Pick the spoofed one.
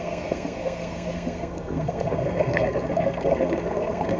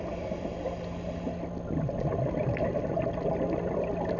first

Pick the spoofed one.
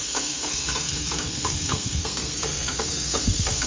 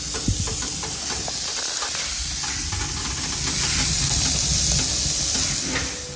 first